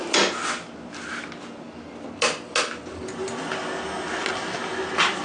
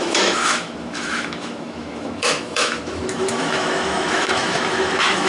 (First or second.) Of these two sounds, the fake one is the second